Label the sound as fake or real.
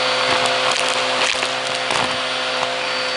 real